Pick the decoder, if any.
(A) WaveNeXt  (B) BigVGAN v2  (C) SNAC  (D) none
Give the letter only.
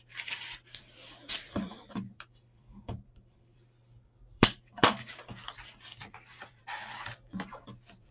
B